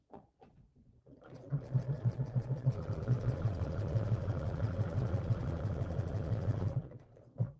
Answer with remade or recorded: remade